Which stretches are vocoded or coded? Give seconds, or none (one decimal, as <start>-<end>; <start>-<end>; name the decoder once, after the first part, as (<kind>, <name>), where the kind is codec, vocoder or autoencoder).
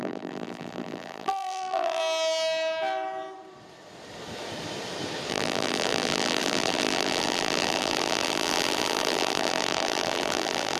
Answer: 0.0-2.0 (vocoder, BigVGAN v2); 5.3-10.8